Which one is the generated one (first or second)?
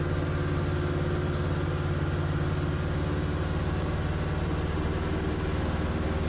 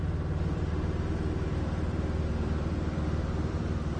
second